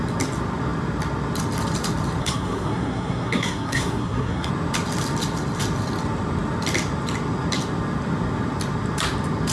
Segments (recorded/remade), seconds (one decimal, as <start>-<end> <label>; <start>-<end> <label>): 0.0-2.2 recorded; 2.2-4.5 remade; 4.5-9.5 recorded

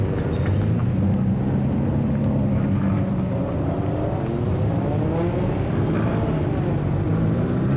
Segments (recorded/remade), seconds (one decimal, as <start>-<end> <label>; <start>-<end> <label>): 0.0-7.8 recorded

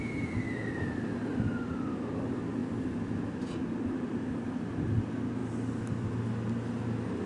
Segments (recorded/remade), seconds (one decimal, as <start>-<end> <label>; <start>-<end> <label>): 0.0-7.3 recorded

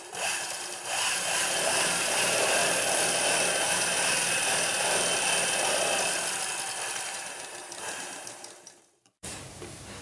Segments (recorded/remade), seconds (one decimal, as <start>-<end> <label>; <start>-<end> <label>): 0.0-2.6 remade; 2.6-7.1 recorded; 7.1-10.0 remade